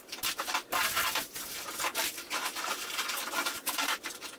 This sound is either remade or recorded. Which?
remade